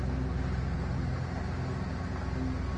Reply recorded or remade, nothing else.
recorded